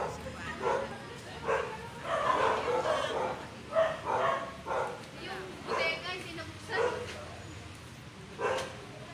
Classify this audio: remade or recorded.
recorded